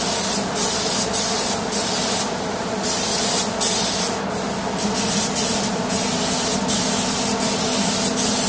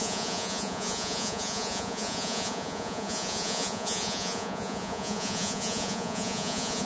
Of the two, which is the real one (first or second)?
first